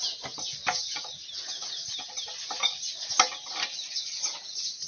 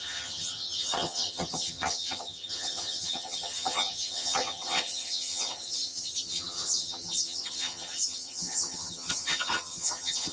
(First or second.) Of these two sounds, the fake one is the second